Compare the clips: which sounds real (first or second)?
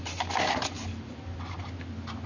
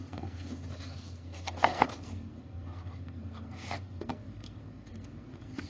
first